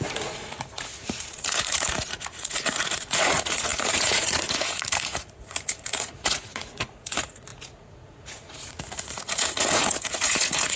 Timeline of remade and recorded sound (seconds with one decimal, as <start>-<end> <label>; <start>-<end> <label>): 0.0-10.8 remade